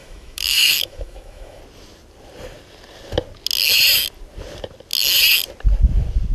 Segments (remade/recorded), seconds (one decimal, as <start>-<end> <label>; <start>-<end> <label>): 0.0-1.6 remade; 1.6-6.3 recorded